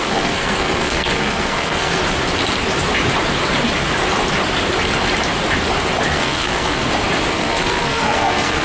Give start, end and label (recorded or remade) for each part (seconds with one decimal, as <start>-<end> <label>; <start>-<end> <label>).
0.0-2.0 remade; 2.0-6.1 recorded; 6.1-6.8 remade; 6.8-7.3 recorded; 7.3-8.6 remade